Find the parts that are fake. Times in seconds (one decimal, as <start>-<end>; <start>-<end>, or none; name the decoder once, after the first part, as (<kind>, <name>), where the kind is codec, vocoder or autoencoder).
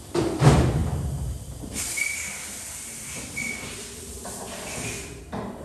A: 0.8-3.8 (vocoder, BigVGAN v2)